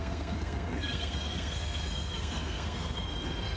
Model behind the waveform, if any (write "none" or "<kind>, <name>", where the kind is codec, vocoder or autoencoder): codec, SNAC